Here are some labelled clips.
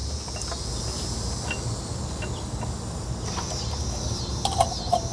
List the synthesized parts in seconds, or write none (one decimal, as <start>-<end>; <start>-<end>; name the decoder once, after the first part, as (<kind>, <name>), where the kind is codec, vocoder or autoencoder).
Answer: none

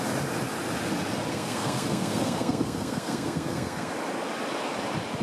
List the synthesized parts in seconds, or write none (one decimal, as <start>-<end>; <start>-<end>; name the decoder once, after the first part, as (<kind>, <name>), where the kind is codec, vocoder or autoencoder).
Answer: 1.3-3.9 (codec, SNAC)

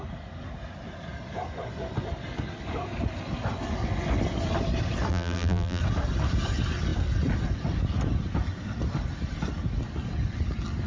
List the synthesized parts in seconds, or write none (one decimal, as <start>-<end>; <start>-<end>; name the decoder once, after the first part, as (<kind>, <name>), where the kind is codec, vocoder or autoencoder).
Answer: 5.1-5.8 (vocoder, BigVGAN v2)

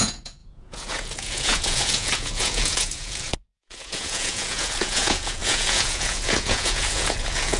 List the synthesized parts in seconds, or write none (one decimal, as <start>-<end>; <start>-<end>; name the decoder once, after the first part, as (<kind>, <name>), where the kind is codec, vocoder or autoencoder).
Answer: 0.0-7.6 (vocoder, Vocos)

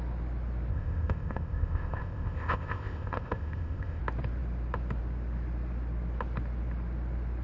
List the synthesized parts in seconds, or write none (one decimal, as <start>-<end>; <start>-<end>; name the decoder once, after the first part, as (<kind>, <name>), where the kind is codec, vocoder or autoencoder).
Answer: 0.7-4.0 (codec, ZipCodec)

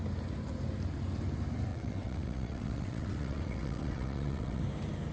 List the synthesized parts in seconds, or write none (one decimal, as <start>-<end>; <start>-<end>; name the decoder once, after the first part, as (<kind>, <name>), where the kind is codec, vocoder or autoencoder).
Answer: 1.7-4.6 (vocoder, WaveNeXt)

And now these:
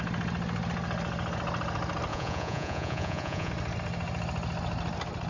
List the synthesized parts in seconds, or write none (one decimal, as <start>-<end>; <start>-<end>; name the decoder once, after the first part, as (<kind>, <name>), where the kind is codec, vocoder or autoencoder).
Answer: 2.1-3.5 (vocoder, Vocos)

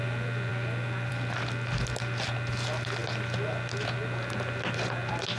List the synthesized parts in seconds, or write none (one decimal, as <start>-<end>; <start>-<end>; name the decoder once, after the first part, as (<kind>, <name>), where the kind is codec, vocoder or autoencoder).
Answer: none